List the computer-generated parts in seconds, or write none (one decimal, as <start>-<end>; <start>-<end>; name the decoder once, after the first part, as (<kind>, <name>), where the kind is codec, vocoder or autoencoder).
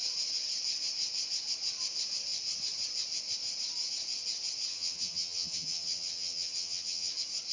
4.7-7.1 (vocoder, HiFi-GAN)